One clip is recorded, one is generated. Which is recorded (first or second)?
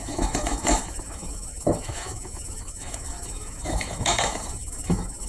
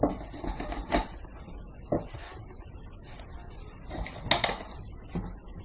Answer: second